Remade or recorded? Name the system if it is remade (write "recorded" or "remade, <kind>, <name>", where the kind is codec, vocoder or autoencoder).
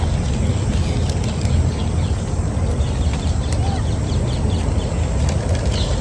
recorded